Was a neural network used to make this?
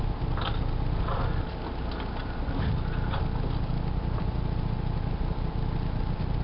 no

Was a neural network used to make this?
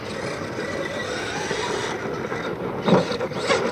no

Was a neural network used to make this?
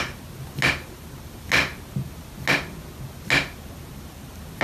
no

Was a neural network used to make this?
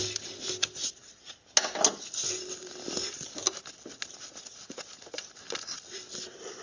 no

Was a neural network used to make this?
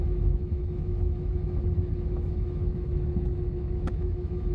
yes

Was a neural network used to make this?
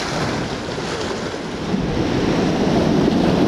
no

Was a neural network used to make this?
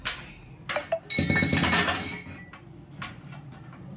no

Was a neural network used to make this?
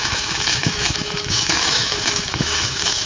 yes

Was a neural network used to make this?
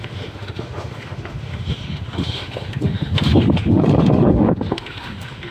yes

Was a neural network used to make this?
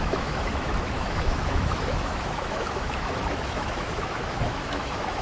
yes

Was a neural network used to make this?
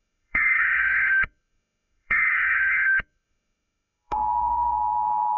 yes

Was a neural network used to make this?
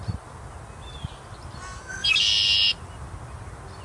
no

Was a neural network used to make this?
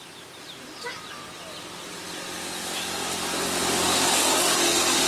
no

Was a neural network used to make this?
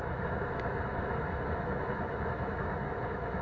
yes